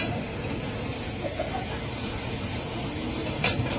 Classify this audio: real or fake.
real